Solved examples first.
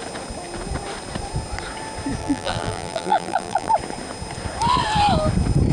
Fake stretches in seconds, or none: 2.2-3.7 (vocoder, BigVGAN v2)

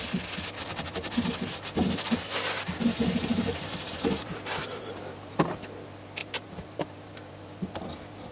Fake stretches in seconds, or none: 2.9-5.4 (vocoder, BigVGAN v2); 6.2-7.7

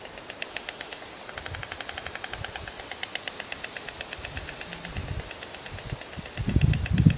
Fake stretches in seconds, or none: 0.5-1.0 (autoencoder, DAC-VAE)

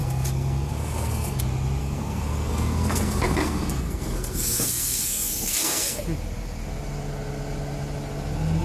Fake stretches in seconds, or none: 0.0-1.4 (codec, SNAC); 1.8-6.0

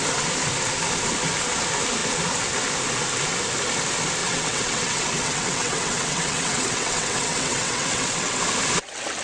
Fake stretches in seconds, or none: 4.2-8.4 (vocoder, WaveNeXt)

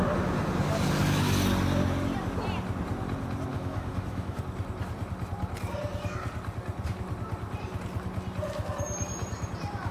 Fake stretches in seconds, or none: 3.5-4.4 (autoencoder, DAC-VAE)

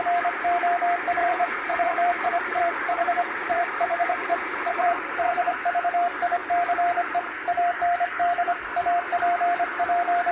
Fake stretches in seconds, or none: 1.2-5.6 (vocoder, Vocos)

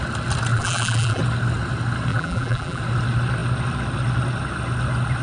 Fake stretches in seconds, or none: 0.5-1.2 (vocoder, BigVGAN v2); 2.1-2.8